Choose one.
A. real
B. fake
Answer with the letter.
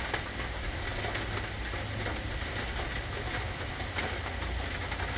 A